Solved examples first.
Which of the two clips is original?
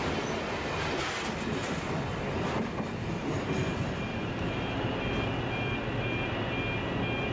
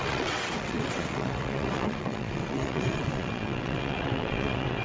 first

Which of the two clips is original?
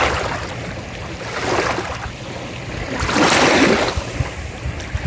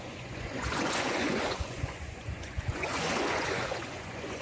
first